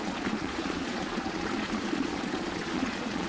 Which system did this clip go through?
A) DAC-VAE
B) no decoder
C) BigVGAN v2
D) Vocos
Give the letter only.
D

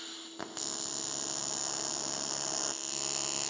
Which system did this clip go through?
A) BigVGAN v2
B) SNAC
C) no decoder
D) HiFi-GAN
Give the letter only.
C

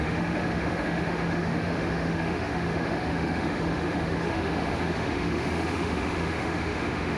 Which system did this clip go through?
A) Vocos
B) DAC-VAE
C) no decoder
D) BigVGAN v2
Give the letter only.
B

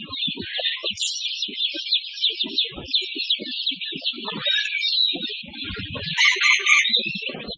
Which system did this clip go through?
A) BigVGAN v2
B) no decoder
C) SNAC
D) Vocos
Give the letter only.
B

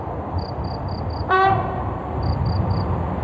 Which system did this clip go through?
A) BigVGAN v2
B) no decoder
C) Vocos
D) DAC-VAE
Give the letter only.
A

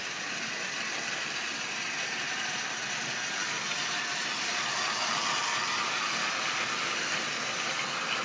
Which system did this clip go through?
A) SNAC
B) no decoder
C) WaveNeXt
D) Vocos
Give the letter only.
B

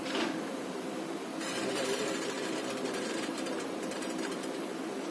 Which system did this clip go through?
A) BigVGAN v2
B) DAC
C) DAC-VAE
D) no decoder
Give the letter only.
A